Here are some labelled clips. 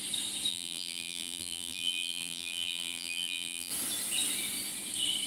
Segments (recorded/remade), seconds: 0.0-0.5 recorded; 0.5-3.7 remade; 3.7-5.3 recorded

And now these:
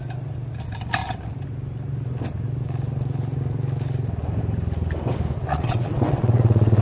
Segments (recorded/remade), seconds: 0.0-5.4 recorded; 5.4-6.8 remade